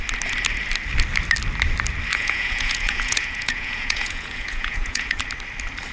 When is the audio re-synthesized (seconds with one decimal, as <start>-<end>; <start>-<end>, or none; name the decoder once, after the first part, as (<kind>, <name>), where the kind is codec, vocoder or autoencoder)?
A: 2.1-5.2 (vocoder, Vocos)